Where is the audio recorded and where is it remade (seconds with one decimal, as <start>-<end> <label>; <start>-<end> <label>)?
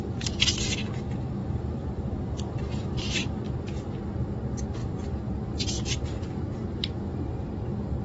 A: 0.0-1.4 recorded; 1.4-3.5 remade; 3.5-4.8 recorded; 4.8-8.0 remade